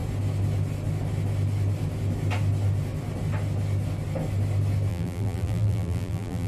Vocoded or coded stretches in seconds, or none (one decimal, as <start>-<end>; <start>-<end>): 4.9-6.5

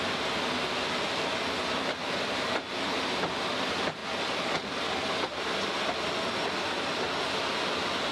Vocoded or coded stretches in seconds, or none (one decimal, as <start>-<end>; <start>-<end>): none

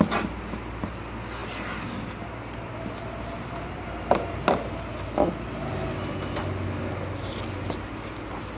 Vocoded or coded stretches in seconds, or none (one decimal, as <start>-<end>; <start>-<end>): none

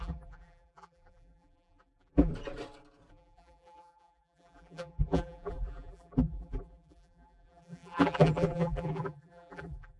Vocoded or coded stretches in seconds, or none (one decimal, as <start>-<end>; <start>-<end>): 0.0-2.3; 3.1-10.0

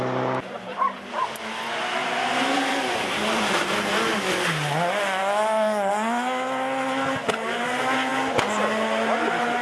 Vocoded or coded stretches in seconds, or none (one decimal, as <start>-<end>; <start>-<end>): 2.0-3.7

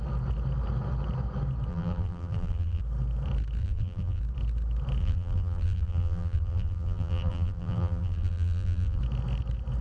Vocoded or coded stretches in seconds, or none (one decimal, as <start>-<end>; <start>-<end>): 1.7-2.8; 3.6-4.2; 5.0-9.0

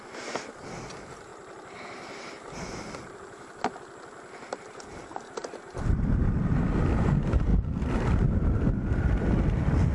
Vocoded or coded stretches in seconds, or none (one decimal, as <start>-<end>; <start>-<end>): 1.3-3.7; 5.4-6.1; 7.5-8.7

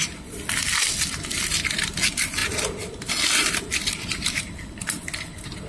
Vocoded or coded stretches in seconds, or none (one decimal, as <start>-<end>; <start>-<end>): none